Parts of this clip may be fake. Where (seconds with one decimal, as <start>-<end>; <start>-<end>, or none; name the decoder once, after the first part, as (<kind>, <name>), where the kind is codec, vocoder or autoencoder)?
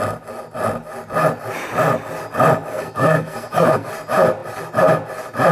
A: 2.7-3.9 (codec, SNAC)